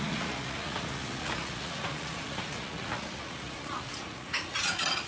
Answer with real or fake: fake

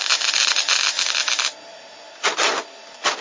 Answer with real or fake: real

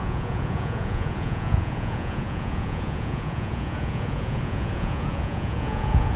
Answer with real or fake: fake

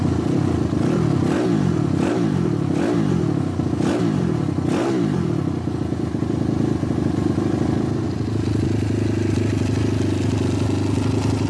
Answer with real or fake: real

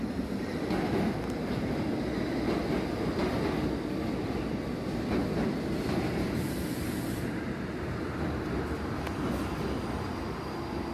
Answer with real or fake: real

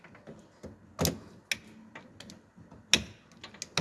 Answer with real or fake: real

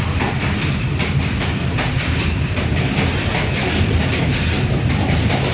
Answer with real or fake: real